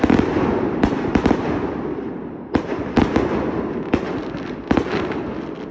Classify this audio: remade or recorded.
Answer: recorded